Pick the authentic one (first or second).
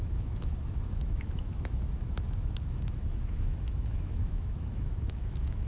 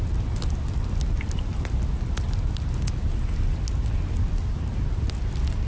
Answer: second